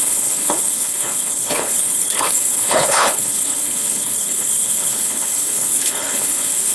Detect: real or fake fake